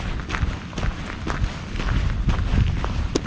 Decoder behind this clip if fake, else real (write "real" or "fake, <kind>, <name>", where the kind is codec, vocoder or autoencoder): real